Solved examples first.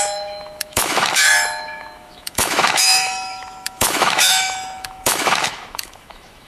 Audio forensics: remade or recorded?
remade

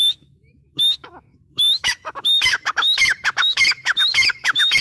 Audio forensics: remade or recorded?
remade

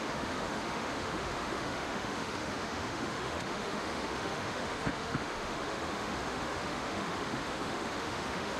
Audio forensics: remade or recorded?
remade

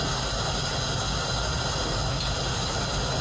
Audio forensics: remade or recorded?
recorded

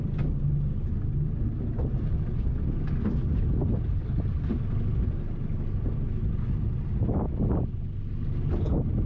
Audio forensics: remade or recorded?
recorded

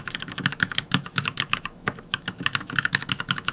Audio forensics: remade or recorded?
remade